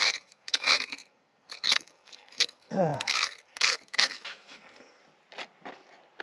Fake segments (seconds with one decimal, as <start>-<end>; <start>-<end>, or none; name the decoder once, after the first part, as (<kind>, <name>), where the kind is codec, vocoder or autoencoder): 0.0-5.0 (codec, SNAC)